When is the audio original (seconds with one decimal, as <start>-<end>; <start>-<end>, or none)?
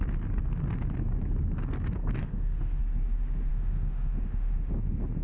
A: 0.0-2.2; 2.8-3.5; 4.7-5.2